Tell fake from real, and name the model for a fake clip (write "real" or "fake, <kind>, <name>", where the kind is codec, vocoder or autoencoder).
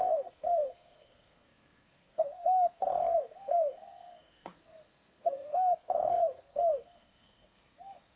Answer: fake, codec, SNAC